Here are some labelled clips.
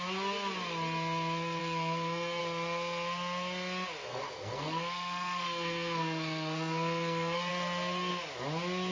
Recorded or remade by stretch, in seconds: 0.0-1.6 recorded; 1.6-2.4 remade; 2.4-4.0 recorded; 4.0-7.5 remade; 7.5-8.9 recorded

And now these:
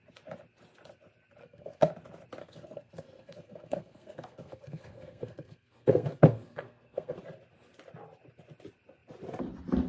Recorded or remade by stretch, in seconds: 0.0-1.4 recorded; 1.4-1.9 remade; 1.9-2.4 recorded; 2.4-7.2 remade; 7.2-9.9 recorded

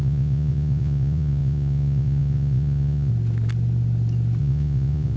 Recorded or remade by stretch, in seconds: 0.0-3.1 remade; 3.1-4.4 recorded; 4.4-5.2 remade

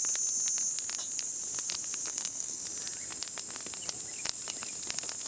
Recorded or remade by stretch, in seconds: 0.0-2.1 recorded; 2.1-2.6 remade; 2.6-5.3 recorded

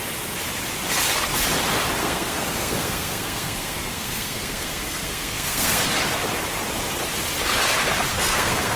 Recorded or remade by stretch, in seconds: 0.0-2.0 recorded; 2.0-5.8 remade; 5.8-8.1 recorded; 8.1-8.8 remade